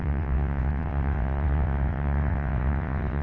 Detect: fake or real fake